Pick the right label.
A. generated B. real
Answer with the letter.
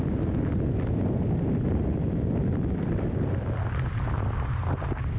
B